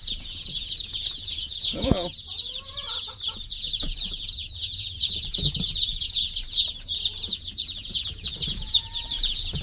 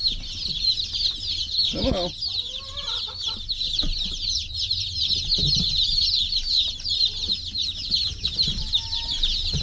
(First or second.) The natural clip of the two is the second